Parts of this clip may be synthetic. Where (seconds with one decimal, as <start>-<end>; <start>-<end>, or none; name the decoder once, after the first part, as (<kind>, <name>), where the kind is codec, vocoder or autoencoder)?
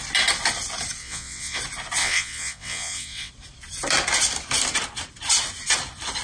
1.0-1.6 (vocoder, WaveNeXt); 2.0-3.3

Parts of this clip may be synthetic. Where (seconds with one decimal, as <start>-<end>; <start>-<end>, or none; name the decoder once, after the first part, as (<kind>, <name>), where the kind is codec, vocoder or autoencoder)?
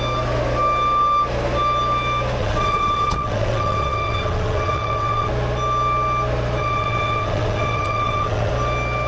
2.4-5.3 (vocoder, WaveNeXt); 6.6-8.5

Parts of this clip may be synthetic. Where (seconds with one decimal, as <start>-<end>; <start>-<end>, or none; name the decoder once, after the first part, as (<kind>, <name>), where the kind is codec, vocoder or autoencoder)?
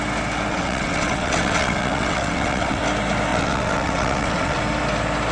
0.5-2.8 (vocoder, WaveNeXt); 3.3-4.6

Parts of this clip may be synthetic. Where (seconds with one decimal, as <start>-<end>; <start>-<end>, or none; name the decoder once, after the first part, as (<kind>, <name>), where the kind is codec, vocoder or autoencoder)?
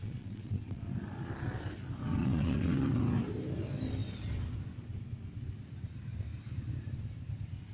0.0-0.8 (vocoder, WaveNeXt); 2.2-3.0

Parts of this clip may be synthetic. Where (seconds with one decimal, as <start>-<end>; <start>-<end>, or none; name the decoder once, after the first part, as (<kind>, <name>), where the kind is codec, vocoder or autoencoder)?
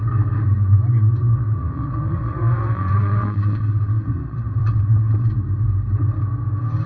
1.2-5.3 (vocoder, WaveNeXt)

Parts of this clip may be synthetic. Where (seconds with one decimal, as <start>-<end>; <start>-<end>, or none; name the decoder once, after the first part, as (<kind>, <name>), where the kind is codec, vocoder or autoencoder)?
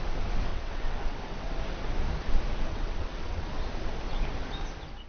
0.5-1.6 (vocoder, WaveNeXt); 2.7-3.5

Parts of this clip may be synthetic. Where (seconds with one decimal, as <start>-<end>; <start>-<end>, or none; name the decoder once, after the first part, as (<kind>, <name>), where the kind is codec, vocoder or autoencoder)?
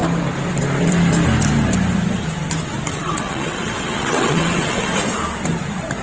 2.9-5.0 (vocoder, WaveNeXt)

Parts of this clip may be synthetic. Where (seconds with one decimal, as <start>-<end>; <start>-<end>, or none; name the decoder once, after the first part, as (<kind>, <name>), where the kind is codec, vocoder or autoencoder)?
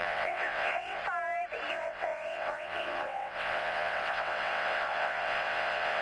0.0-1.0 (vocoder, WaveNeXt); 1.7-6.0